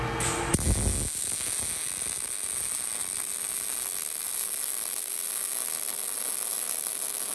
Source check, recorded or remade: recorded